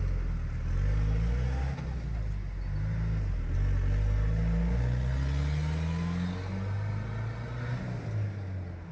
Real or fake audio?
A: real